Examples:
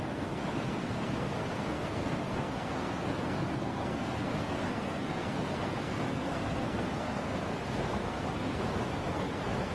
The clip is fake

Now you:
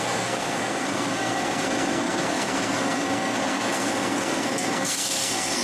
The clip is fake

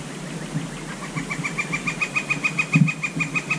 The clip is real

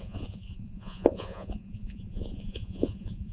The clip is fake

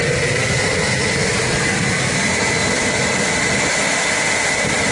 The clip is real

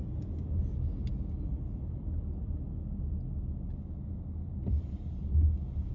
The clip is real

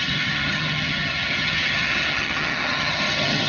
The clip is fake